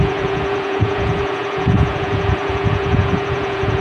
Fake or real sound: fake